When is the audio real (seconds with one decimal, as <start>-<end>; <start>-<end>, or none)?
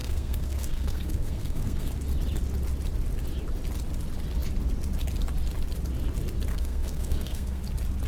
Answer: 1.9-6.5; 7.6-8.1